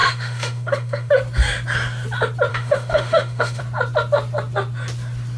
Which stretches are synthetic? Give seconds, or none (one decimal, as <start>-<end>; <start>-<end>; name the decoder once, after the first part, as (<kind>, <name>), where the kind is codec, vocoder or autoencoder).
0.0-1.1 (autoencoder, DAC-VAE); 2.5-3.6